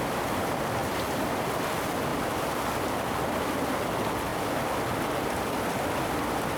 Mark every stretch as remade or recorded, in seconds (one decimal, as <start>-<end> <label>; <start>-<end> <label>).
0.0-0.8 recorded; 0.8-1.4 remade; 1.4-2.1 recorded; 2.1-3.4 remade; 3.4-6.6 recorded